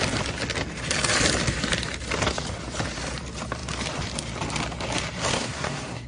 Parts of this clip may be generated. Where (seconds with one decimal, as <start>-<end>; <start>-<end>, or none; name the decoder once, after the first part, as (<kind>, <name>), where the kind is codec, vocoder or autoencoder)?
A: 5.3-6.1 (codec, SNAC)